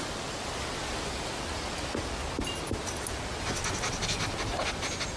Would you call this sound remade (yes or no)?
no